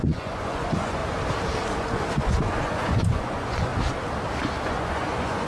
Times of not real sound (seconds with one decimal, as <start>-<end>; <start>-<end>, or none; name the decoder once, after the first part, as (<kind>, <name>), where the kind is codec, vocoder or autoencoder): 0.0-1.0 (vocoder, Vocos); 1.7-3.7; 4.6-5.5